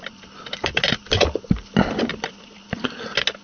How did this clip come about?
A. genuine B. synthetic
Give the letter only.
A